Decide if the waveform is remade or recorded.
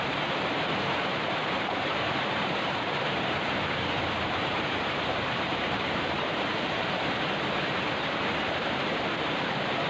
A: remade